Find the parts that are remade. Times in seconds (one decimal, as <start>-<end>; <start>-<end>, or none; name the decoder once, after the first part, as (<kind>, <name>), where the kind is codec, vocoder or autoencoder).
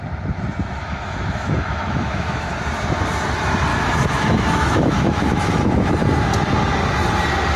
0.8-2.5 (autoencoder, DAC-VAE); 3.7-5.9